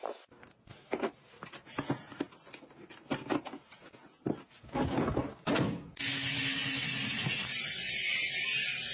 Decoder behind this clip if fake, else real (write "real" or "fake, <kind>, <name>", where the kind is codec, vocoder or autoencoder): real